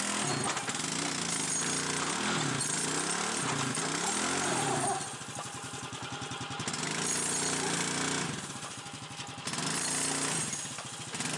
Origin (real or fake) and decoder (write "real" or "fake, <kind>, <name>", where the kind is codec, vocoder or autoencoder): real